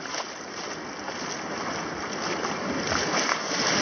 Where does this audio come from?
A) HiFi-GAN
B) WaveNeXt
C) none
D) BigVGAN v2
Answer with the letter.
C